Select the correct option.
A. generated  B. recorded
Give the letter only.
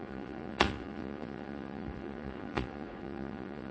A